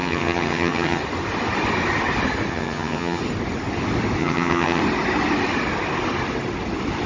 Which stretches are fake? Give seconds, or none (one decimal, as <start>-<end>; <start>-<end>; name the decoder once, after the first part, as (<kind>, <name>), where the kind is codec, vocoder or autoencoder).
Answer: 0.0-1.0 (vocoder, HiFi-GAN); 2.5-3.2; 4.2-4.8